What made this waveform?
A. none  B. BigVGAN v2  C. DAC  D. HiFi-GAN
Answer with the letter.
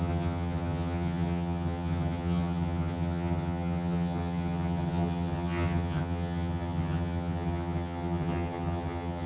D